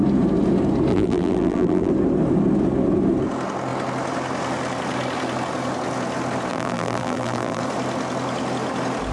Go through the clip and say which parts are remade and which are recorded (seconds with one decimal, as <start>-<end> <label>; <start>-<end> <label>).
0.0-0.9 recorded; 0.9-1.9 remade; 1.9-6.5 recorded; 6.5-7.6 remade; 7.6-9.1 recorded